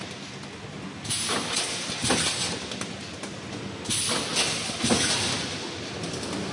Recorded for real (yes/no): yes